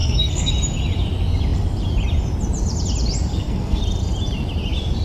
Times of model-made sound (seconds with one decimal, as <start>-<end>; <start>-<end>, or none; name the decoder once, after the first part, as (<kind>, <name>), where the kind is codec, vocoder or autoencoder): 0.0-0.5 (codec, SNAC); 3.3-3.8